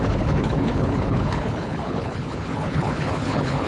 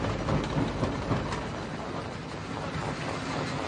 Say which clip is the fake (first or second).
first